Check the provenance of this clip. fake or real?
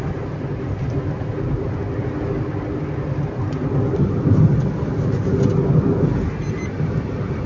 real